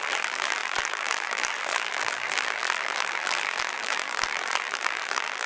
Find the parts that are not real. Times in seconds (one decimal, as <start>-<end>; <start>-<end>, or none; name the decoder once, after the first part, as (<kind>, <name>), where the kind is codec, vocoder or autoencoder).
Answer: 0.0-5.5 (vocoder, BigVGAN v2)